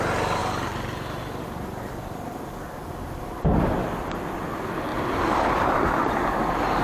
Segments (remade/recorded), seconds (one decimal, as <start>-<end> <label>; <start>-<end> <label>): 0.0-0.4 recorded; 0.4-3.8 remade; 3.8-6.8 recorded